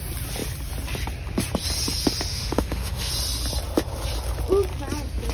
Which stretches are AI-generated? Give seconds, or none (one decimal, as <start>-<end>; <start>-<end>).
2.3-3.1